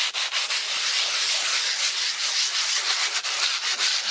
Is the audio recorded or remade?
recorded